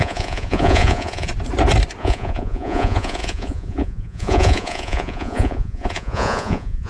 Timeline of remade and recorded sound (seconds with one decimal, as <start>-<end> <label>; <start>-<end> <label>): 0.0-1.3 remade; 1.3-2.0 recorded; 2.0-6.9 remade

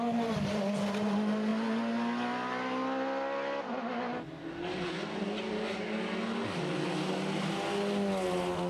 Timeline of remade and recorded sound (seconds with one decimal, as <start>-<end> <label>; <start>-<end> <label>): 0.0-8.7 recorded